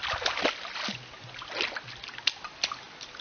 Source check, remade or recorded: recorded